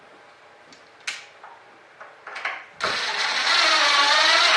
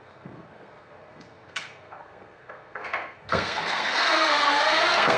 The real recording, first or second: first